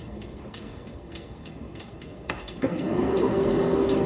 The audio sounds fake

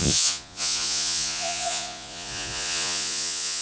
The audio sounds fake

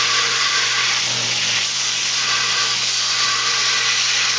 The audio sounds fake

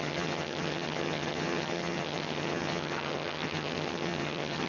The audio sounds fake